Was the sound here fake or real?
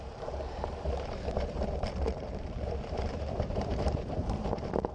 fake